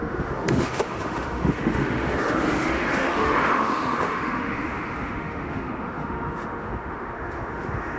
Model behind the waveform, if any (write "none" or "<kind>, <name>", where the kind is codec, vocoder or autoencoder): autoencoder, DAC-VAE